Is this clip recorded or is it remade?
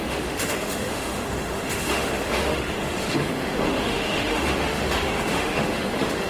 remade